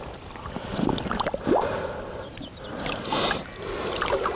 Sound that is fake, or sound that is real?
real